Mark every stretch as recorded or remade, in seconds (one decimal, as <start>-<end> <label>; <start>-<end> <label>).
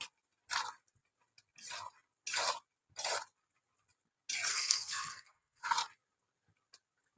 0.0-4.5 recorded; 4.5-5.6 remade; 5.6-7.2 recorded